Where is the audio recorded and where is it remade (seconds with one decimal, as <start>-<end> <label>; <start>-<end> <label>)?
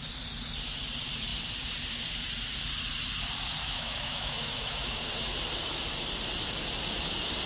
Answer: 0.0-3.6 recorded; 3.6-5.0 remade; 5.0-7.5 recorded